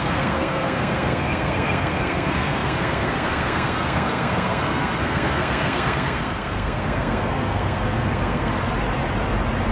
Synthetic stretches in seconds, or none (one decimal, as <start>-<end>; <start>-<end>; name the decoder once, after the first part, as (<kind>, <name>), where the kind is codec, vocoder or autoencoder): 0.0-8.5 (codec, SNAC)